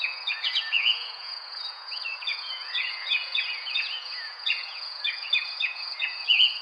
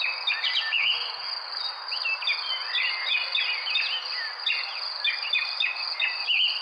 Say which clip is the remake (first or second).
first